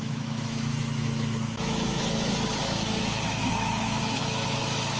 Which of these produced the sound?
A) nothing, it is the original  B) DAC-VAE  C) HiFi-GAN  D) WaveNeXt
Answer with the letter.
B